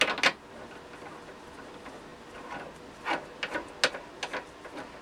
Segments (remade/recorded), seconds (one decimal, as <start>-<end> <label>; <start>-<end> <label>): 0.0-5.0 recorded